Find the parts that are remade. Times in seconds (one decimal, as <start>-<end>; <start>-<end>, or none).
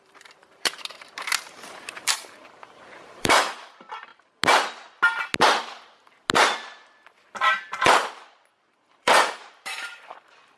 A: 0.0-4.1; 7.9-10.6